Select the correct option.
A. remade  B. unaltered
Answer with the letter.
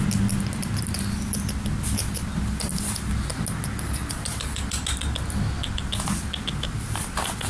B